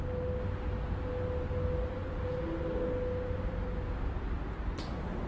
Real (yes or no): yes